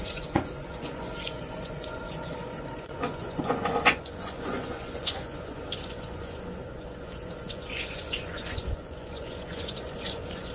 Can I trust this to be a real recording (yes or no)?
no